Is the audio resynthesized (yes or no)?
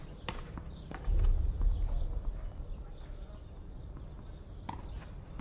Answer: no